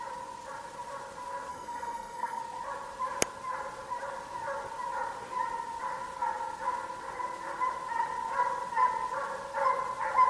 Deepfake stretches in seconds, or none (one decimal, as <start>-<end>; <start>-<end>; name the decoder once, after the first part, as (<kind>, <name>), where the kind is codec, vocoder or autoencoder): 1.5-2.4 (codec, SNAC)